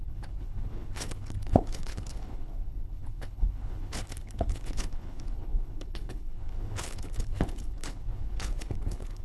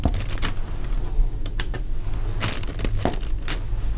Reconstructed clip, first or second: first